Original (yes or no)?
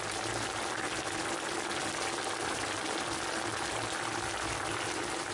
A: yes